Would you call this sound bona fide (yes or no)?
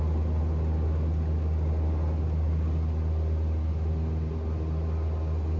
yes